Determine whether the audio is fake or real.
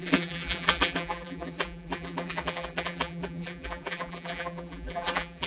fake